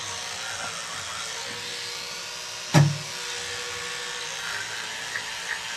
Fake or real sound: real